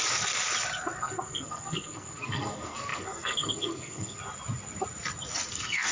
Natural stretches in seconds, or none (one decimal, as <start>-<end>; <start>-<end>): 0.0-1.0; 4.2-5.5

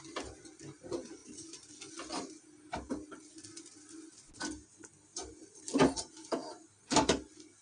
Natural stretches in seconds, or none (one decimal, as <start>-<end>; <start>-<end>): 0.0-7.6